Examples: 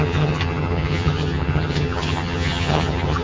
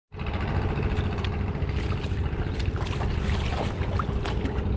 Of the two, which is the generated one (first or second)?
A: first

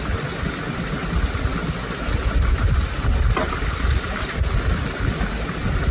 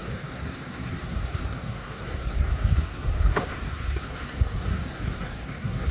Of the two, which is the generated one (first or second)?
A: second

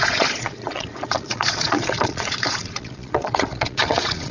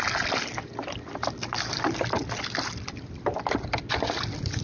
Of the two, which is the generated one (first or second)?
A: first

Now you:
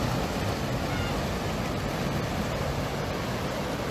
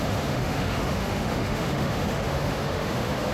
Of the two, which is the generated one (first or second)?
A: second